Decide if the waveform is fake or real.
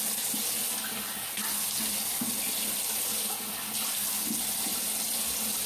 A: real